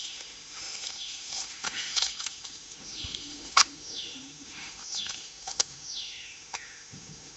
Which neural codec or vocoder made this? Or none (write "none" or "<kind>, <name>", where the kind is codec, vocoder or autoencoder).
autoencoder, DAC-VAE